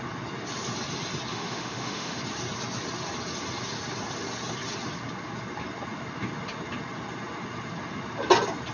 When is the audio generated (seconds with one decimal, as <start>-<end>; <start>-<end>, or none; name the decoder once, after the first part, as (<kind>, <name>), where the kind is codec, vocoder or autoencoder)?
1.3-2.2 (autoencoder, DAC-VAE)